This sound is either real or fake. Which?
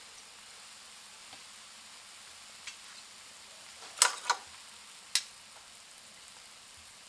real